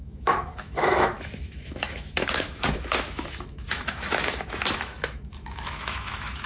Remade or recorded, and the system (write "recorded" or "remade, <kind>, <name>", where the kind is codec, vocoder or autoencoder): remade, autoencoder, DAC-VAE